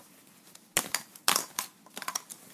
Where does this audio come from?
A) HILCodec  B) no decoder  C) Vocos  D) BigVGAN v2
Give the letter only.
B